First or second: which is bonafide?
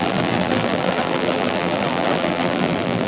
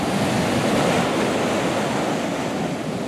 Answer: second